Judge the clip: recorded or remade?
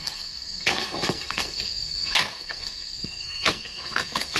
remade